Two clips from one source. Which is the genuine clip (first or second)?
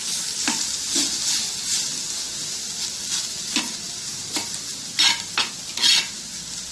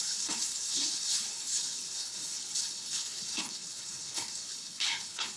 first